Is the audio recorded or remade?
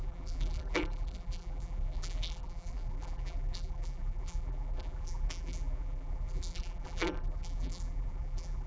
remade